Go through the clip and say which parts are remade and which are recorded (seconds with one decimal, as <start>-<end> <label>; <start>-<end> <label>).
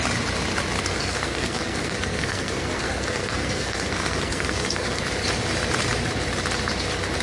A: 0.0-0.9 recorded; 0.9-5.0 remade; 5.0-7.2 recorded